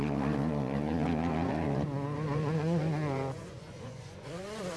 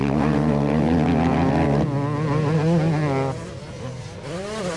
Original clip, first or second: second